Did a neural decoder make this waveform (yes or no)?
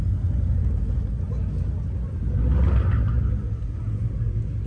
no